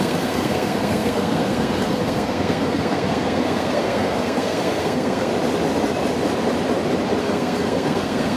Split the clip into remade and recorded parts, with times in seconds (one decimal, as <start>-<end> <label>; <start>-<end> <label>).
0.0-5.3 remade; 5.3-7.2 recorded; 7.2-8.4 remade